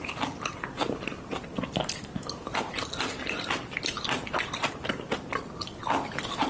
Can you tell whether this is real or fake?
real